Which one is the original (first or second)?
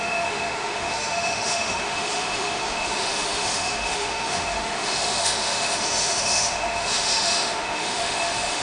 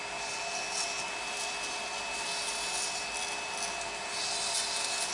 second